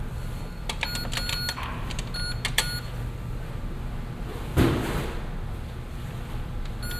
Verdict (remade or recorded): recorded